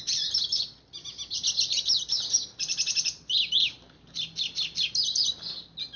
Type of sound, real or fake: fake